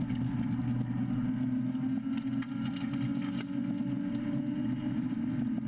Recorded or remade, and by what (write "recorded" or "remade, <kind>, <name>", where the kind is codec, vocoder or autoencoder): recorded